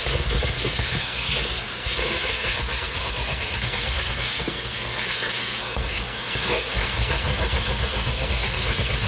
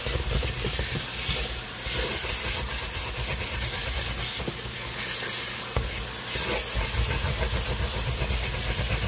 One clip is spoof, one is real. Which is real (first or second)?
second